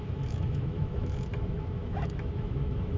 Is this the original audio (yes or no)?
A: no